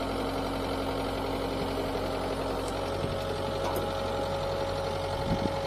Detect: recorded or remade recorded